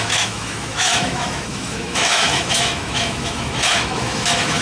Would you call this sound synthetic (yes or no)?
yes